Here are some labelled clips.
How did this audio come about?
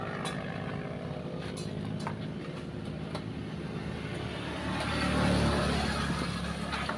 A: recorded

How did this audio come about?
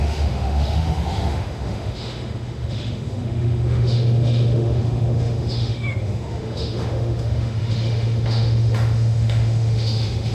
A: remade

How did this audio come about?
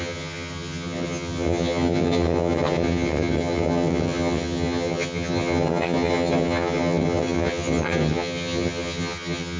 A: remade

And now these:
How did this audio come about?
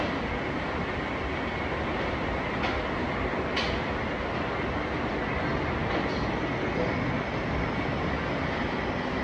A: recorded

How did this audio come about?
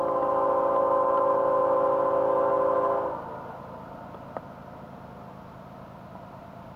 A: recorded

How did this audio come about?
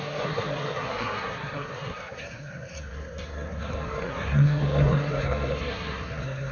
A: remade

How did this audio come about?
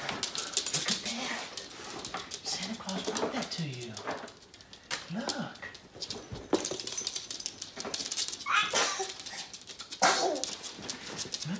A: recorded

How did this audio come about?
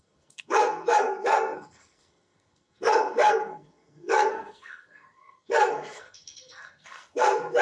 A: remade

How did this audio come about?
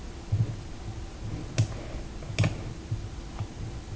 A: recorded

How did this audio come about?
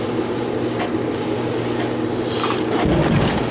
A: recorded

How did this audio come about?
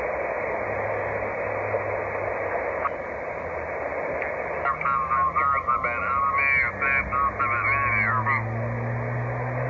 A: recorded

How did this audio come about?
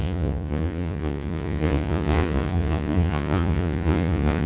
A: remade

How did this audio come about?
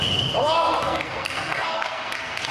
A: remade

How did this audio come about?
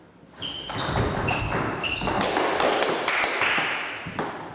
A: recorded